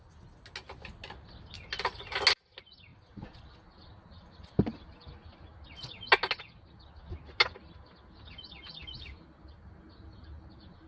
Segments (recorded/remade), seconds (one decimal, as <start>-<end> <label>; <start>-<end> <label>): 0.0-10.9 recorded